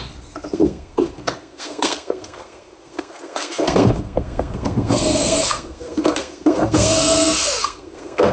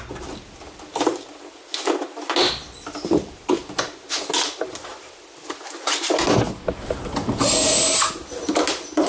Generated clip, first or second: first